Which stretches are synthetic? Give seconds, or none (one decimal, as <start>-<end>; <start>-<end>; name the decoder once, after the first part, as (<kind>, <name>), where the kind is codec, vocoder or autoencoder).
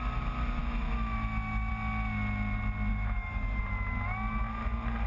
0.6-1.7 (autoencoder, DAC-VAE); 2.9-3.6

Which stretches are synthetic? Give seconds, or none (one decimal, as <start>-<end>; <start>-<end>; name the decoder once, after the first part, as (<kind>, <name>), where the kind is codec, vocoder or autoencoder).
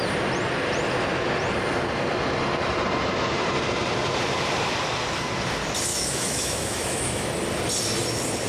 5.9-7.3 (autoencoder, DAC-VAE)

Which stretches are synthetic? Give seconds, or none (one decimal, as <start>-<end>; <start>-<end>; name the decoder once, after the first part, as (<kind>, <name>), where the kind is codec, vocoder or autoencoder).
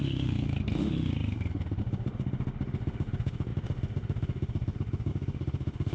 0.0-5.9 (autoencoder, DAC-VAE)